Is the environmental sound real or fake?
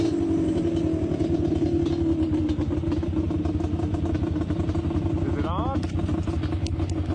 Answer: real